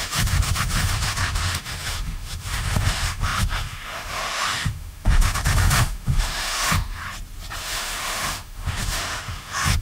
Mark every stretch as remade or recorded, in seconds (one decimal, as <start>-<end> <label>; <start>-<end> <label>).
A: 0.0-7.0 remade; 7.0-7.6 recorded; 7.6-9.8 remade